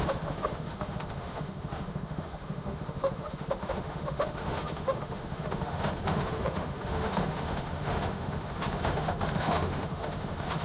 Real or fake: fake